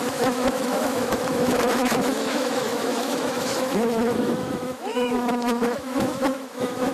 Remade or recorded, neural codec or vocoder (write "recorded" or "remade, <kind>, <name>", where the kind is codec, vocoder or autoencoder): remade, autoencoder, DAC-VAE